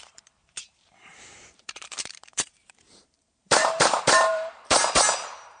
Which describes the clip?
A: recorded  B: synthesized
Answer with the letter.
B